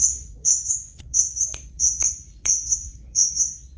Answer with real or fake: fake